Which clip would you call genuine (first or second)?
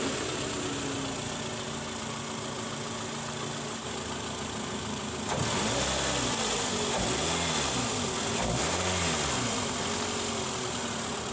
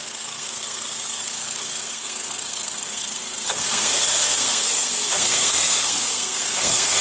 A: first